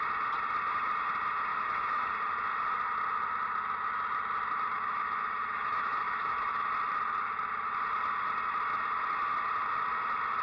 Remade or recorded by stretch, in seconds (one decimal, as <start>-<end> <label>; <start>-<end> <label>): 0.0-1.5 recorded; 1.5-2.1 remade; 2.1-4.7 recorded; 4.7-6.5 remade; 6.5-10.4 recorded